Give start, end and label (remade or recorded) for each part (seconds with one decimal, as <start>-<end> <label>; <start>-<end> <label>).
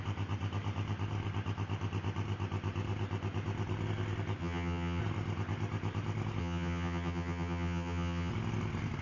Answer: 0.0-4.4 recorded; 4.4-5.0 remade; 5.0-6.4 recorded; 6.4-8.3 remade; 8.3-9.0 recorded